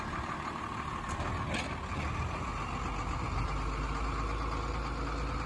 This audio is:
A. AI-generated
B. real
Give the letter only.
B